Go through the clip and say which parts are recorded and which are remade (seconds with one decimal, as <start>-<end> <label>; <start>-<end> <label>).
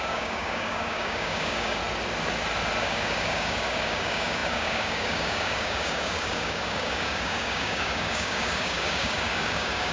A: 0.0-1.8 remade; 1.8-2.8 recorded; 2.8-9.9 remade